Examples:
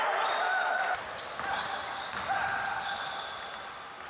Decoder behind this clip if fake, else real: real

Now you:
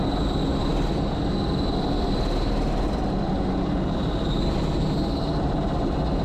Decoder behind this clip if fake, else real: real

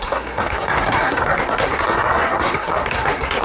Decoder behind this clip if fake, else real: fake, codec, SNAC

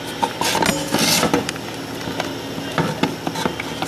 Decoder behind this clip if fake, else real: real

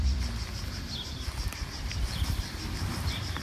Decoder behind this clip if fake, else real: fake, vocoder, BigVGAN v2